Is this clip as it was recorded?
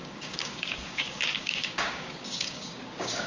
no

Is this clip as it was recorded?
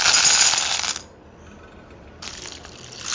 yes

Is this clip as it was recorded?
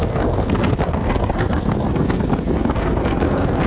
no